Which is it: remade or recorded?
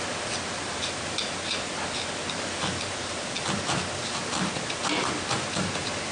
recorded